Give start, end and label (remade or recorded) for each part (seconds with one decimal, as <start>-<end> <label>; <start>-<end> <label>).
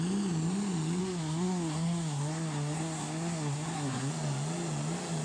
0.0-1.0 recorded; 1.0-4.1 remade; 4.1-5.2 recorded